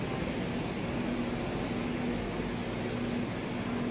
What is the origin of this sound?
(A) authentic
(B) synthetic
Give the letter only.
A